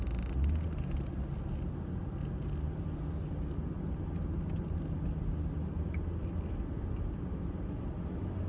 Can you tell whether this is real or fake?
real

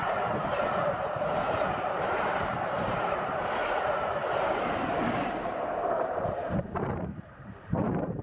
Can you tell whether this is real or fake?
fake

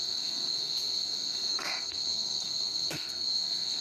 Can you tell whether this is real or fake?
fake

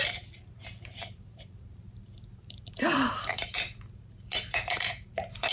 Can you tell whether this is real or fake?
fake